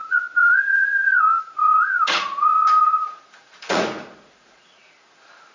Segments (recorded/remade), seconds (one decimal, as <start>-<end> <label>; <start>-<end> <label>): 0.0-5.5 remade